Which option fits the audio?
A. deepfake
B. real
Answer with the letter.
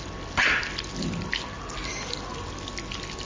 B